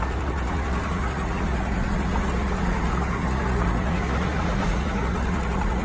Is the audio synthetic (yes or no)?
yes